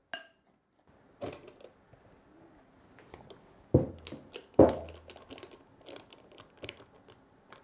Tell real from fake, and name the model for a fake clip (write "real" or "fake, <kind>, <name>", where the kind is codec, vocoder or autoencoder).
real